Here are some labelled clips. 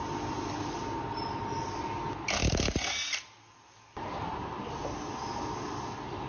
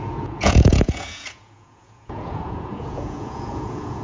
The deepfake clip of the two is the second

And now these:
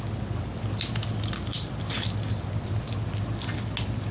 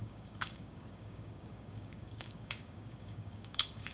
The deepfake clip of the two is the second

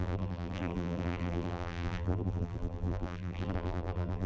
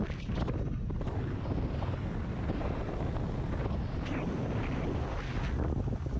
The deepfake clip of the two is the first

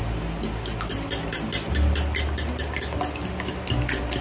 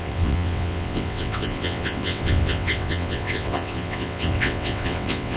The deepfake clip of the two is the second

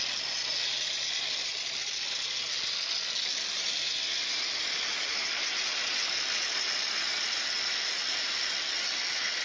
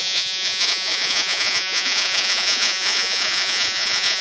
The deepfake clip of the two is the second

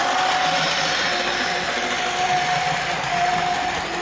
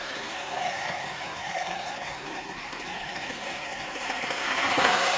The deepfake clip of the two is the second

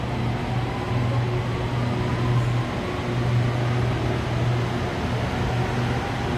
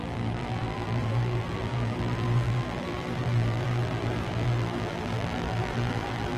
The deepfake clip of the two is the second